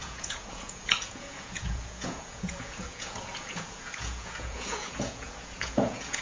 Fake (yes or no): yes